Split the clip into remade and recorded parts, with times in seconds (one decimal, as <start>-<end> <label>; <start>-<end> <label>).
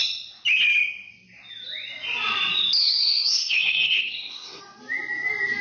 0.0-2.8 recorded; 2.8-4.6 remade; 4.6-5.6 recorded